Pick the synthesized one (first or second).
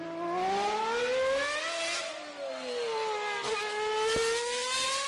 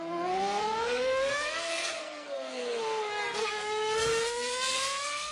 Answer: second